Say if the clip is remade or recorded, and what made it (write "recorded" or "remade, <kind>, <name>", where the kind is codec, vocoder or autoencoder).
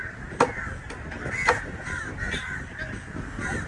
recorded